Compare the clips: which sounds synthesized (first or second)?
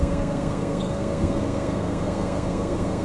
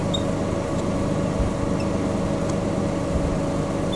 first